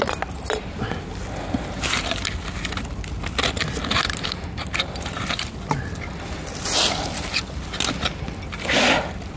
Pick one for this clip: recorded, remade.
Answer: recorded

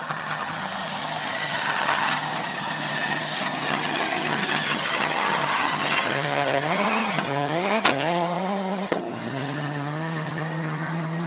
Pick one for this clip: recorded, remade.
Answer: remade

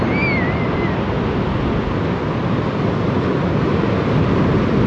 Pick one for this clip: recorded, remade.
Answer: recorded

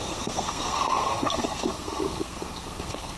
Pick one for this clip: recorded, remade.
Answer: remade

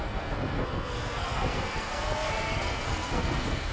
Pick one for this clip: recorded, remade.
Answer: remade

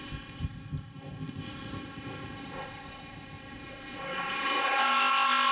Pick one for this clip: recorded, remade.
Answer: remade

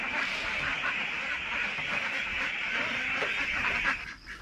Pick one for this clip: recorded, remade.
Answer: recorded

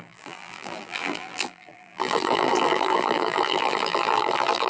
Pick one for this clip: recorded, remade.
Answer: remade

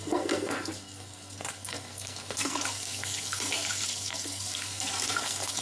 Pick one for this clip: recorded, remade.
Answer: remade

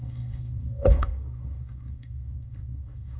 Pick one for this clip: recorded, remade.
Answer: remade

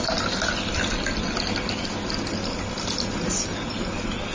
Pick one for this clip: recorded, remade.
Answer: recorded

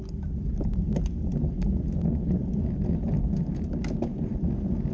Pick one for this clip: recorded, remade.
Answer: recorded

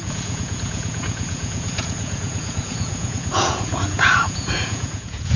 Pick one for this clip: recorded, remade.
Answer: remade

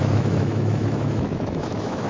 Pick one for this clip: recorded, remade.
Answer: remade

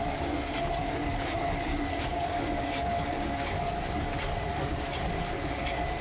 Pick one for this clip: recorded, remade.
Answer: remade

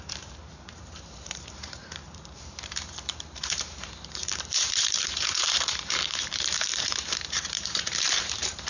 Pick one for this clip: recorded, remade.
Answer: remade